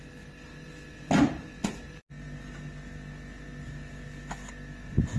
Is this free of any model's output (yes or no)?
yes